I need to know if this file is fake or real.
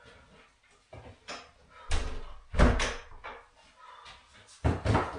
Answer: real